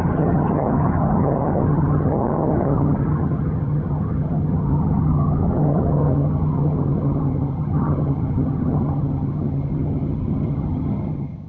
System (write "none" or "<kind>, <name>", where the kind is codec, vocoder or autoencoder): vocoder, HiFi-GAN